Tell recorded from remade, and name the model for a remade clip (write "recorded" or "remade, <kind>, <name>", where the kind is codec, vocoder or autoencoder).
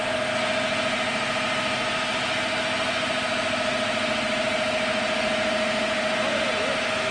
recorded